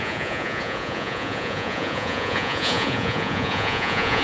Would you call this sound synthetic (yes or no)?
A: yes